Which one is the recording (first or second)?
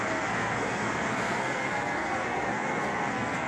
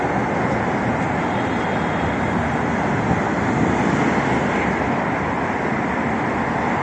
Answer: second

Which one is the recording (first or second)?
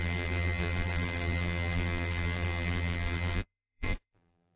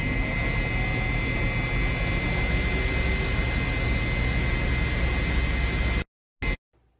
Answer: second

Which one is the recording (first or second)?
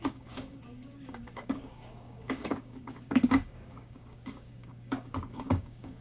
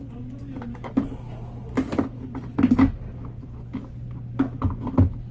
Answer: second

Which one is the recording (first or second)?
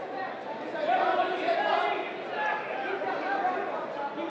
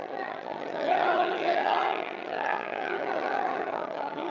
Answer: first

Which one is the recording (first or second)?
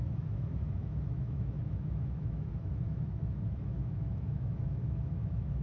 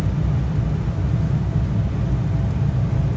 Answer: second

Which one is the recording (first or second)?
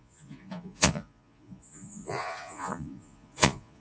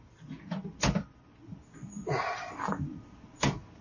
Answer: second